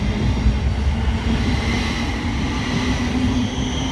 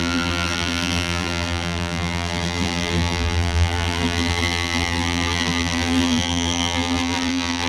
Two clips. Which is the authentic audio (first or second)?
first